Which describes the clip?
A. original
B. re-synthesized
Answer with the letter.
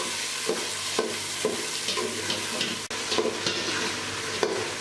A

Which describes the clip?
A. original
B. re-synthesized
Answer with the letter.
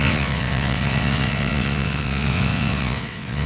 B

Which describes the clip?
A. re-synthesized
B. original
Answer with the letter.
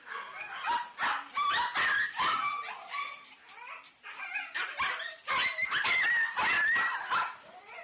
B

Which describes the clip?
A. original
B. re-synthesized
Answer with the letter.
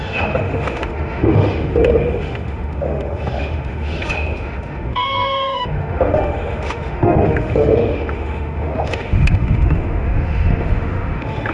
B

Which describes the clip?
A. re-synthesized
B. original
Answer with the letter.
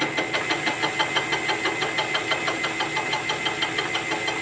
B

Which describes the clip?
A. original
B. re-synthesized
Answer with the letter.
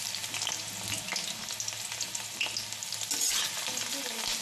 A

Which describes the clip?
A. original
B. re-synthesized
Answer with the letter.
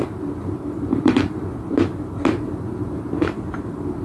B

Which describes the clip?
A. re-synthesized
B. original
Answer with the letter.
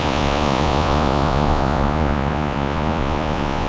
A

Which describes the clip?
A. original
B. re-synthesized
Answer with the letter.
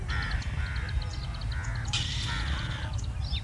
A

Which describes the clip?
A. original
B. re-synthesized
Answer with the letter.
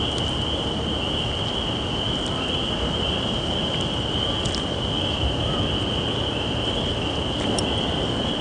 A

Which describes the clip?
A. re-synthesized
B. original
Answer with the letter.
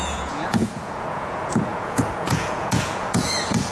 A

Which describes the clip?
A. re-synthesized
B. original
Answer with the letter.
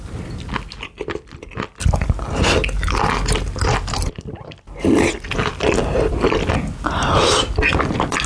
B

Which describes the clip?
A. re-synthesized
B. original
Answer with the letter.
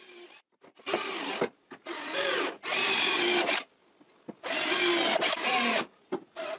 B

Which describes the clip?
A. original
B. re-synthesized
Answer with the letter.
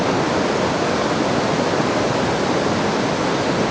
A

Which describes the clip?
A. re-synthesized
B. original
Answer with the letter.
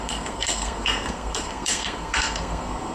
A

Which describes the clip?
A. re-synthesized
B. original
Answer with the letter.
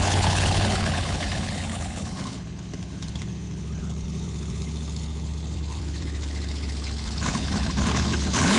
A